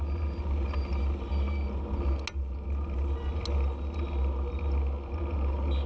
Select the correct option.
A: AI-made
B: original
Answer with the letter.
B